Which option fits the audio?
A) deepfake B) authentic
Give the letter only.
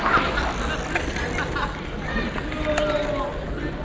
B